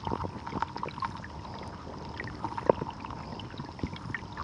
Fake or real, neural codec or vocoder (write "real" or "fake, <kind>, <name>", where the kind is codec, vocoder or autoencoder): real